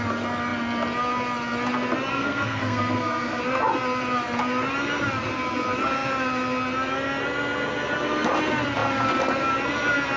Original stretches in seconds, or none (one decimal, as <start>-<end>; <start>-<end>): 0.0-2.1; 3.4-10.2